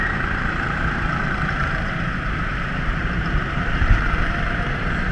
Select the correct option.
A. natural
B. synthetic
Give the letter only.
B